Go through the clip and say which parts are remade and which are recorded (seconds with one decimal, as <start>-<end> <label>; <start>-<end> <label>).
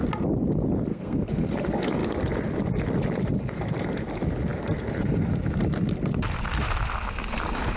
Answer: 0.0-0.9 recorded; 0.9-1.5 remade; 1.5-7.8 recorded